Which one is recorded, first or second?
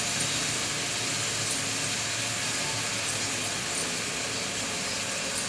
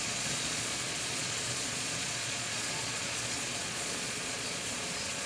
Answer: first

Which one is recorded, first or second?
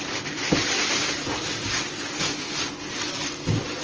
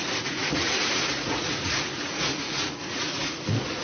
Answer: first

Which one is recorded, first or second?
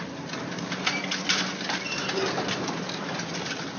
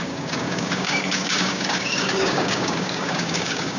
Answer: first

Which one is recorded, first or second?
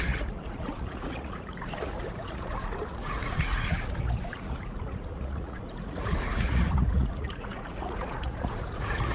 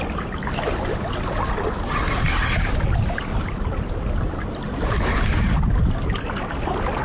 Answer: second